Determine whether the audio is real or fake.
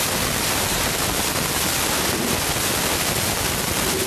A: real